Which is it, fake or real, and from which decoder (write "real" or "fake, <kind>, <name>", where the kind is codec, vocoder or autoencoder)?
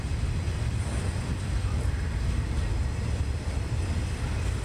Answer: real